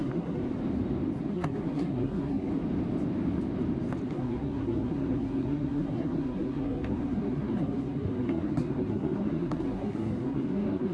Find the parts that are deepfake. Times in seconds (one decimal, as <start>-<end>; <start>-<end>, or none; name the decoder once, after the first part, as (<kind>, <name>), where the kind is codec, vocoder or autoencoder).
0.0-0.5 (codec, SNAC); 1.3-2.5; 4.0-10.9